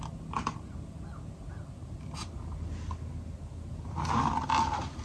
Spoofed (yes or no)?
no